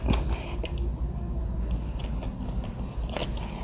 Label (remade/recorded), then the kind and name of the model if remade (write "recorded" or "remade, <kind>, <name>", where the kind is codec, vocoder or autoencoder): recorded